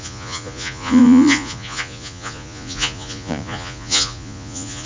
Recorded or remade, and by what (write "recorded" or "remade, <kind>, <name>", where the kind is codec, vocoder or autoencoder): remade, vocoder, Vocos